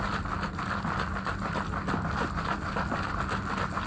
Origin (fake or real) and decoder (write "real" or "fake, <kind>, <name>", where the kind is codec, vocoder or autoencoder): real